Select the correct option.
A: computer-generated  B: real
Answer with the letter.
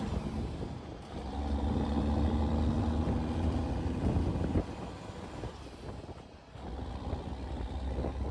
B